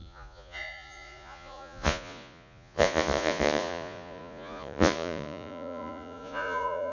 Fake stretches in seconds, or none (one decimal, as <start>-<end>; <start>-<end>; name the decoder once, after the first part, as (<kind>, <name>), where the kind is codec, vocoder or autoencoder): 0.0-6.9 (vocoder, Vocos)